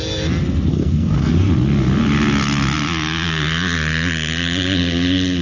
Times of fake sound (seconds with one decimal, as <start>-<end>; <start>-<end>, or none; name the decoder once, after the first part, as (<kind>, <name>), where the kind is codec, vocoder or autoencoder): 0.7-1.3 (codec, SNAC)